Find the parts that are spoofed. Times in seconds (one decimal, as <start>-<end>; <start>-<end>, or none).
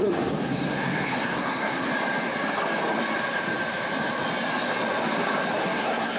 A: 0.0-1.9; 5.6-6.2